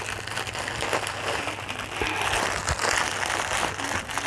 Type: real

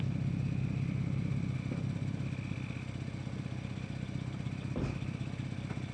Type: real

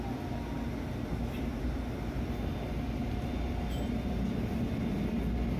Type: real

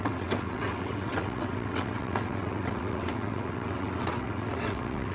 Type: fake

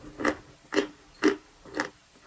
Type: real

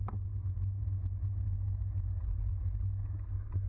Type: real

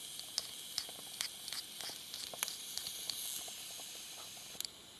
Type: real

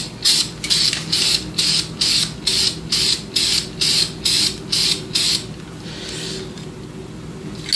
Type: real